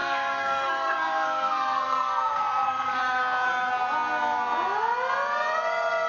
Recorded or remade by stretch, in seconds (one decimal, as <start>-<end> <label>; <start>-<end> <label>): 0.0-3.7 remade; 3.7-6.1 recorded